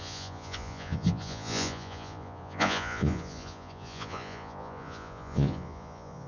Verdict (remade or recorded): remade